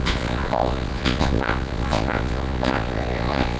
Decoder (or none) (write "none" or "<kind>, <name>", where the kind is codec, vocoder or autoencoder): vocoder, Vocos